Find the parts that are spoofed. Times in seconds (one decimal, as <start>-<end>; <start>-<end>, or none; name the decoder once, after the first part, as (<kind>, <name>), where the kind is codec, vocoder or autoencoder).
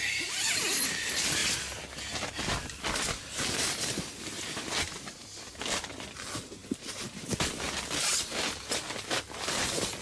none